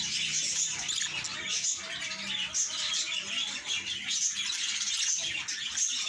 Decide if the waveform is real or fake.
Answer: real